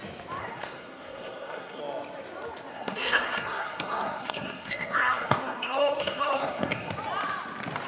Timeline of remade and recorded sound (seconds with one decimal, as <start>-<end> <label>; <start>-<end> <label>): 0.0-0.4 recorded; 0.4-1.8 remade; 1.8-2.7 recorded; 2.7-6.9 remade; 6.9-7.9 recorded

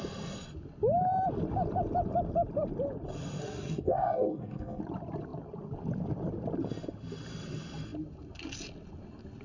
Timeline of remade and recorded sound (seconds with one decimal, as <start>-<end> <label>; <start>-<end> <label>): 0.0-3.4 recorded; 3.4-4.8 remade; 4.8-9.4 recorded